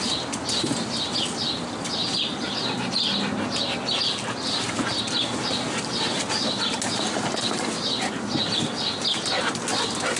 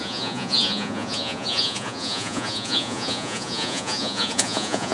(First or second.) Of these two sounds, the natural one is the first